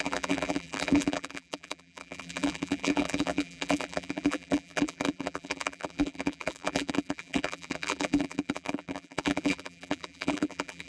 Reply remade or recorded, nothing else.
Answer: remade